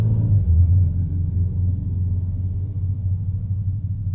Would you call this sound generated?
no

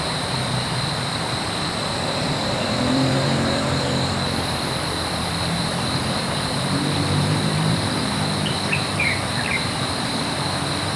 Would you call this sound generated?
yes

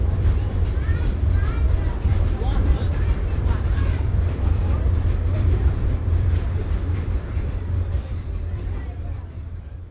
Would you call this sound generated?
yes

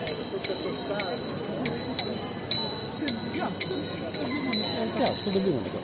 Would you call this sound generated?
no